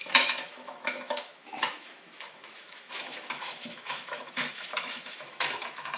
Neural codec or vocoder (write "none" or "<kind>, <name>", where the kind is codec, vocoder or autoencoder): autoencoder, DAC-VAE